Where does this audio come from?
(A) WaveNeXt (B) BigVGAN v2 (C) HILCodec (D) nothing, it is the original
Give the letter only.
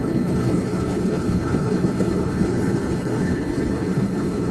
C